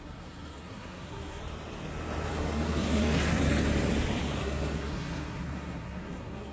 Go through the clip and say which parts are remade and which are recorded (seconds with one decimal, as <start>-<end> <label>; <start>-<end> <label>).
0.0-1.4 remade; 1.4-2.3 recorded; 2.3-3.5 remade; 3.5-4.4 recorded; 4.4-6.5 remade